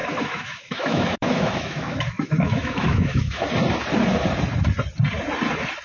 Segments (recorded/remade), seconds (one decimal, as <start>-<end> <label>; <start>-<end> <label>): 0.0-3.5 remade; 3.5-5.8 recorded